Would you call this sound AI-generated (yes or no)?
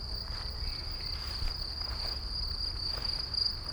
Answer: no